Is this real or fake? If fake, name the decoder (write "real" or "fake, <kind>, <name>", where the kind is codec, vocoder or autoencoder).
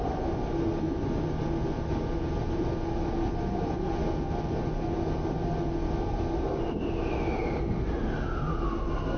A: real